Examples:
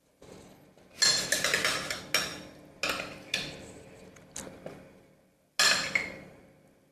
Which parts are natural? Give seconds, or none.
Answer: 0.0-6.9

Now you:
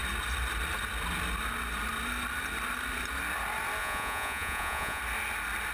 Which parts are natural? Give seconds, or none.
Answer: 0.0-3.8; 5.0-5.7

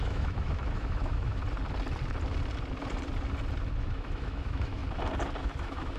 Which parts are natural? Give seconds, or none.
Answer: 1.4-3.8; 4.8-5.4

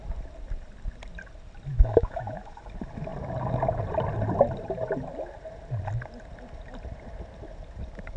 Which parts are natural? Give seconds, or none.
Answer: 0.0-1.7; 2.6-8.2

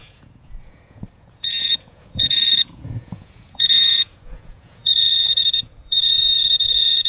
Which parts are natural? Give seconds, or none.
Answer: none

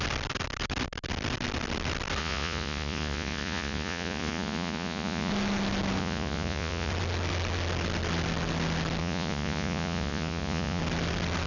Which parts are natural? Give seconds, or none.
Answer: 0.0-2.2; 5.3-6.0; 6.9-9.0; 10.8-11.5

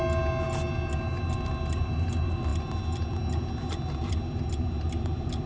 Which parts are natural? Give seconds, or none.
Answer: 0.0-5.5